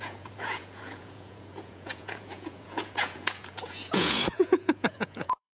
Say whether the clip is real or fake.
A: fake